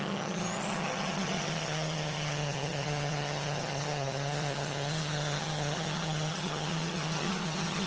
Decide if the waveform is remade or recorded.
remade